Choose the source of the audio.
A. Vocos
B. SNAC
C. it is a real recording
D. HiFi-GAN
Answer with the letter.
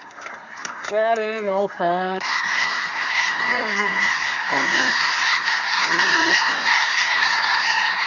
B